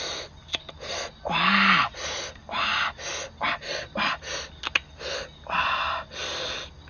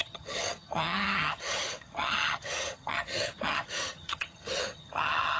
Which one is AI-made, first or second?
second